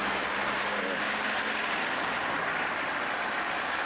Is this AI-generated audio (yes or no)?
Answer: no